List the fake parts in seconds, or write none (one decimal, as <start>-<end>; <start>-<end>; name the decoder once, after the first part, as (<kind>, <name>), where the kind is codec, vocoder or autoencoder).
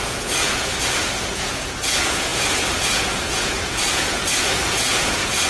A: 0.0-5.5 (vocoder, Vocos)